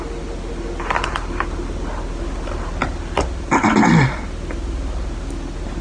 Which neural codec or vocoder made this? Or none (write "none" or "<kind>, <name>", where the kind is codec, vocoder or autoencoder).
none